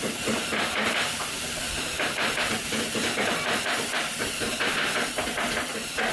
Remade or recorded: remade